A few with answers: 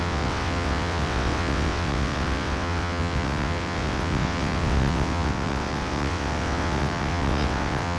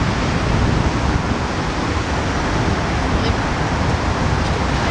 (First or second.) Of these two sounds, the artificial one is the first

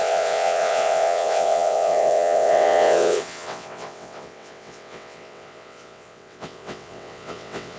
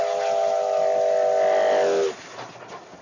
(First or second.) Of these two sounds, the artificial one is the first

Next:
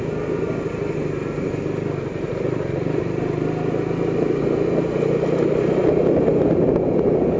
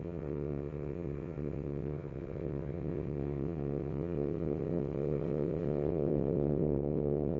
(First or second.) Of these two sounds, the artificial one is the second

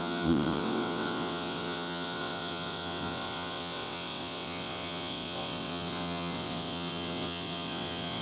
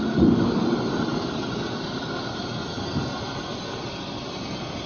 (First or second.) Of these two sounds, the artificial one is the first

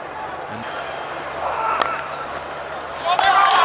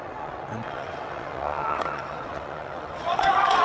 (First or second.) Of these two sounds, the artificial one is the second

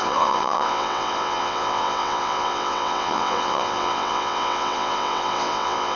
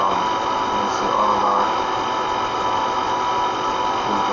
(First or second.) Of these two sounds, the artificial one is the first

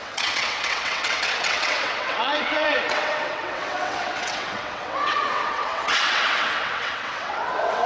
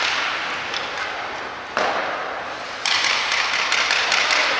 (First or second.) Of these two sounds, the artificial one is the first